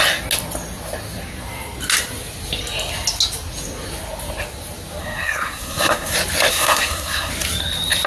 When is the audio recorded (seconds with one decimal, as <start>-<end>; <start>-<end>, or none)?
0.0-5.0; 6.1-6.5; 7.3-8.1